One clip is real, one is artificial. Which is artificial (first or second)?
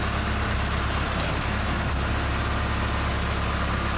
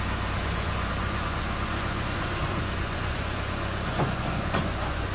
second